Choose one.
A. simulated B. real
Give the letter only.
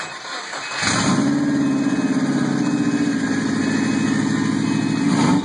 B